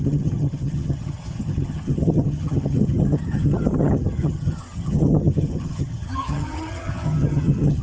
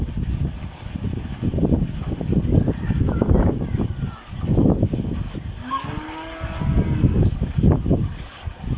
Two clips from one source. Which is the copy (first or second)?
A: first